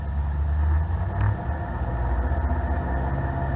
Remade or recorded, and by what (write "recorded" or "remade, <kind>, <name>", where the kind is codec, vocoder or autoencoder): recorded